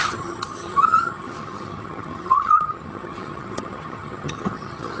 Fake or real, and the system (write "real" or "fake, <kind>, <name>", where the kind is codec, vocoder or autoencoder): fake, vocoder, HiFi-GAN